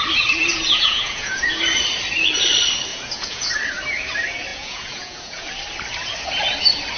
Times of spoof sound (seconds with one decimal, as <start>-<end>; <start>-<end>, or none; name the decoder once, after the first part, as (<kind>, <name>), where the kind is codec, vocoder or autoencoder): 0.5-1.6 (vocoder, Vocos); 2.9-3.5; 4.5-5.5